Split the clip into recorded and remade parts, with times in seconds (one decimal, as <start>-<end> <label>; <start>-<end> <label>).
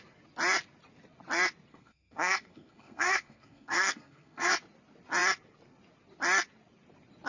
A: 0.0-1.7 recorded; 1.7-4.5 remade; 4.5-7.3 recorded